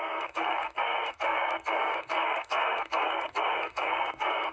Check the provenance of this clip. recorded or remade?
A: remade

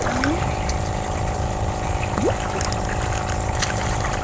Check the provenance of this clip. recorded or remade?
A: recorded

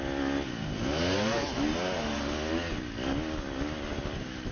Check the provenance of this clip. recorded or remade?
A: recorded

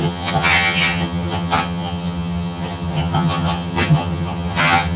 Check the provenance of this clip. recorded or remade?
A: remade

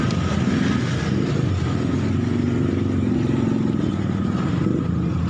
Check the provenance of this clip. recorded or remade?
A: recorded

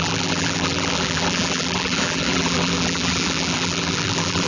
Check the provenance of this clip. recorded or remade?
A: remade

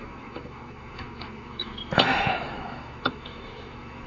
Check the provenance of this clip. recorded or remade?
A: remade